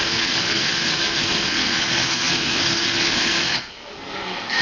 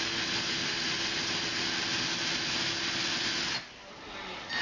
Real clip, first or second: second